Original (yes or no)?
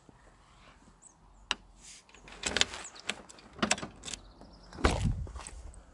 yes